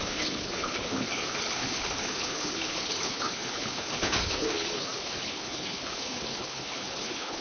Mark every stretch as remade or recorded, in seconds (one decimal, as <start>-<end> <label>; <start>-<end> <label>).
0.0-7.4 remade